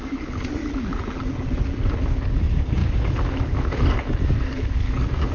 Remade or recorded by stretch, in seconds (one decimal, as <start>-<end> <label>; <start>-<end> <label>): 0.0-0.6 remade; 0.6-2.0 recorded; 2.0-5.3 remade